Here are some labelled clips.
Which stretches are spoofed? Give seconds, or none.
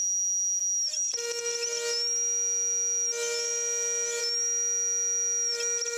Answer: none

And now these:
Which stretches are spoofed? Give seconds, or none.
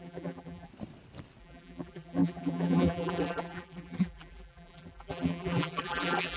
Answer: 0.0-0.7 (vocoder, BigVGAN v2); 1.4-6.4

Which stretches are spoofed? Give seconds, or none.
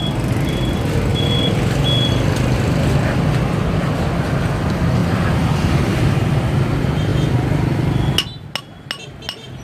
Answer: 5.0-6.5 (vocoder, BigVGAN v2)